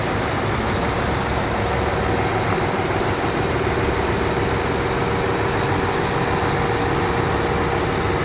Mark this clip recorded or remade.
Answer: recorded